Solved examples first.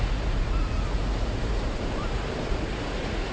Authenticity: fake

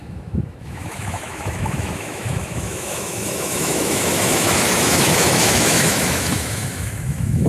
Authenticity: fake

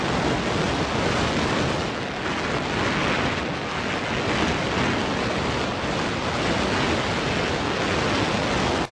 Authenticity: real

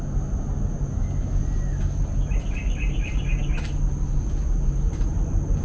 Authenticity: real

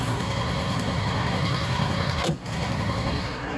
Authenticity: fake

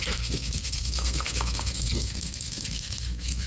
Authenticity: fake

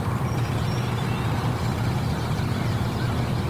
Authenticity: real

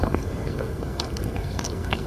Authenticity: fake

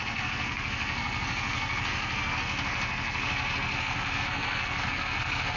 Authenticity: fake